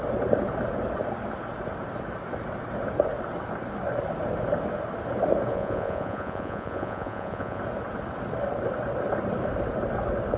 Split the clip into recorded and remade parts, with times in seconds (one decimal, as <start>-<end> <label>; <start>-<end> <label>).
0.0-5.5 recorded; 5.5-7.6 remade; 7.6-10.4 recorded

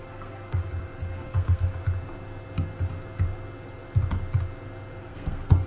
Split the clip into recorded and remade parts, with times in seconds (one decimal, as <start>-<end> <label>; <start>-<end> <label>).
0.0-0.6 remade; 0.6-1.1 recorded; 1.1-1.7 remade; 1.7-5.0 recorded; 5.0-5.7 remade

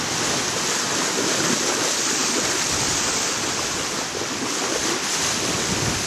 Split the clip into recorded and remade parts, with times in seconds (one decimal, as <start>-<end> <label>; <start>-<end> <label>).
0.0-6.1 recorded

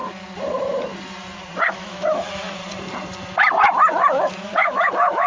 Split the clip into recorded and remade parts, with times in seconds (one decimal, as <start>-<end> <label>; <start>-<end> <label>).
0.0-1.8 recorded; 1.8-2.6 remade; 2.6-4.3 recorded; 4.3-5.3 remade

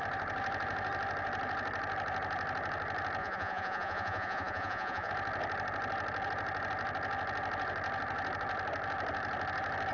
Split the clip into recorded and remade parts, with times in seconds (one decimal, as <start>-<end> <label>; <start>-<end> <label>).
0.0-3.2 recorded; 3.2-5.1 remade; 5.1-9.9 recorded